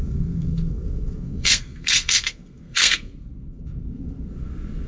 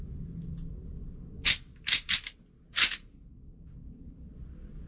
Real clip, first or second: second